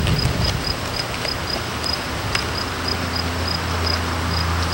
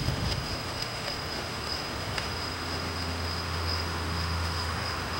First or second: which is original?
first